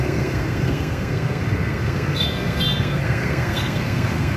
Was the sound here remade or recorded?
remade